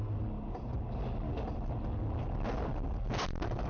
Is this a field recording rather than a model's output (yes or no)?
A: yes